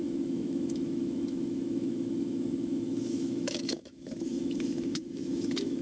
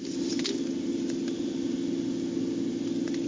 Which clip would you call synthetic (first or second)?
first